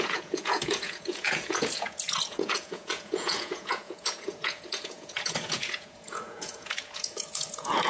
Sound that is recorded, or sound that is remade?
remade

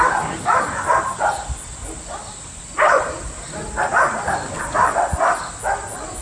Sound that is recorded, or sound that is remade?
recorded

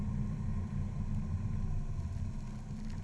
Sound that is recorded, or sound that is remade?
recorded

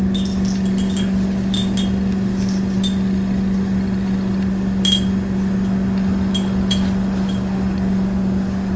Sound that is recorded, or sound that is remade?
recorded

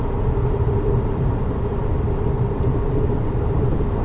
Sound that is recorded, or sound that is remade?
recorded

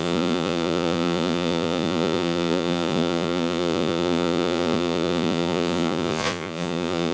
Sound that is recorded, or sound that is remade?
remade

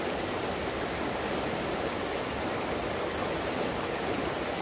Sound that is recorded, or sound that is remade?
recorded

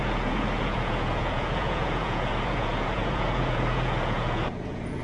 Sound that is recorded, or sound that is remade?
remade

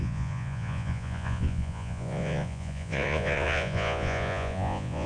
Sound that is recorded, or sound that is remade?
remade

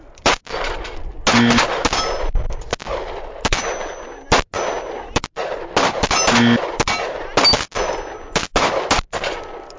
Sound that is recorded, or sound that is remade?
recorded